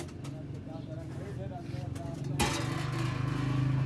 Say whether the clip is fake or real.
real